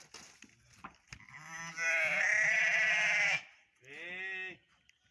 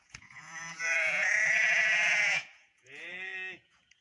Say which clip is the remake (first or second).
second